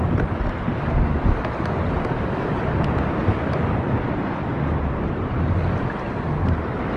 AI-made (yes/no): no